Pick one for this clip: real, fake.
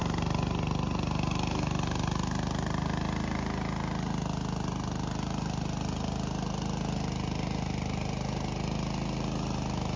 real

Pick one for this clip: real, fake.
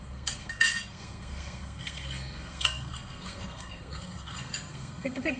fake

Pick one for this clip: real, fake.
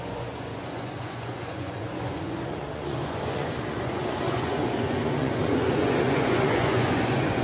fake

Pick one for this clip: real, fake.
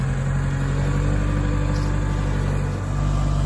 real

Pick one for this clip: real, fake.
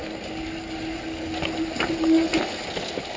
real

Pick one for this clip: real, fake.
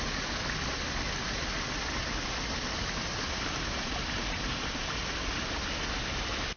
real